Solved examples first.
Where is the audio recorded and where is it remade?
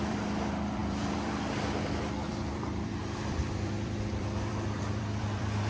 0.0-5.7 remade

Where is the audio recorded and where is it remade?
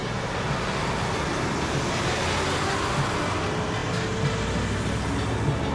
0.0-5.7 recorded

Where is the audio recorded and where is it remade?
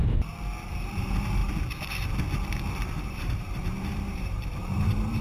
0.0-0.7 recorded; 0.7-1.4 remade; 1.4-3.0 recorded; 3.0-5.2 remade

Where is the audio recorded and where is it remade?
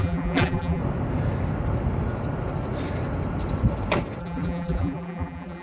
0.0-0.8 remade; 0.8-4.2 recorded; 4.2-5.6 remade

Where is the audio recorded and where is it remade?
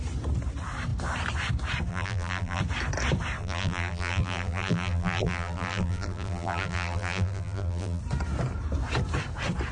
0.0-1.9 recorded; 1.9-2.6 remade; 2.6-3.4 recorded; 3.4-8.0 remade; 8.0-9.7 recorded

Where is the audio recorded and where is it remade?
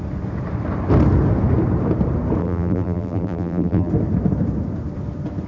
0.0-2.4 recorded; 2.4-3.9 remade; 3.9-5.5 recorded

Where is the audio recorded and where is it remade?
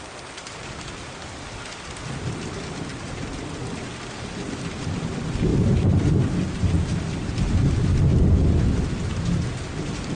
0.0-5.5 recorded; 5.5-6.1 remade; 6.1-10.1 recorded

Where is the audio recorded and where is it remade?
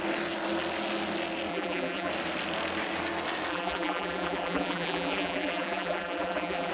0.0-1.5 recorded; 1.5-2.1 remade; 2.1-3.5 recorded; 3.5-6.7 remade